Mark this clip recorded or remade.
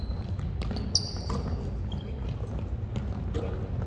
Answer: recorded